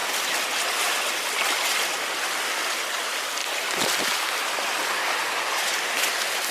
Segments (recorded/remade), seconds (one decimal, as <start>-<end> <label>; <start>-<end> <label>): 0.0-1.0 recorded; 1.0-3.4 remade; 3.4-4.5 recorded; 4.5-5.0 remade; 5.0-6.1 recorded; 6.1-6.5 remade